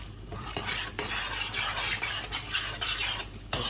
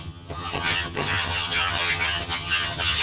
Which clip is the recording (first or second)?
first